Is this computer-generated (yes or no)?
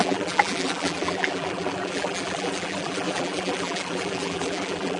yes